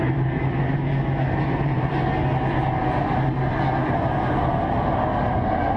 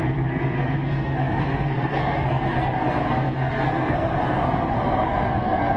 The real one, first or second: first